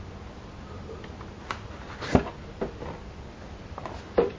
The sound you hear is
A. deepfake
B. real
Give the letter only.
B